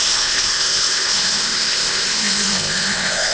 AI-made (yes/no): yes